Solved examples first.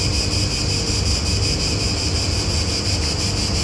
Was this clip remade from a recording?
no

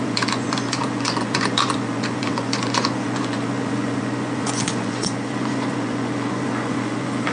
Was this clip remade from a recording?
yes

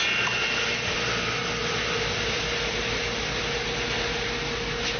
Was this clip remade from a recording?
no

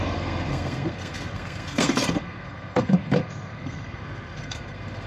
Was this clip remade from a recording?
yes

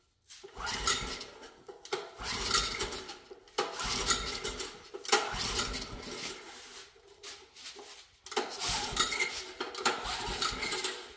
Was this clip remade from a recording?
no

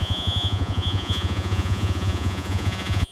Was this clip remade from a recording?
yes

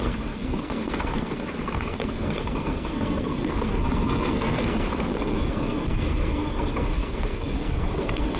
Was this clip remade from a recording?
yes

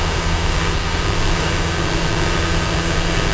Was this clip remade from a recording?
yes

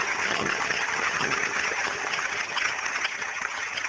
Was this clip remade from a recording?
yes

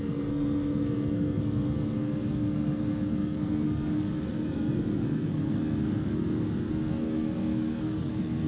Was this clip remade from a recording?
yes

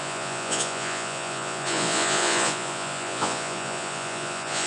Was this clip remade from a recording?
yes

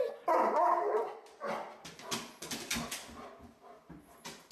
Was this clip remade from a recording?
no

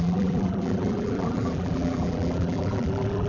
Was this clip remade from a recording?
yes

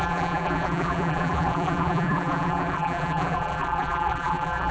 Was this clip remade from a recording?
yes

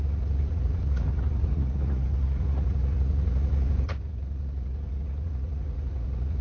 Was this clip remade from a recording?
yes